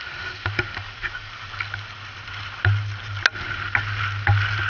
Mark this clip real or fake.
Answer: real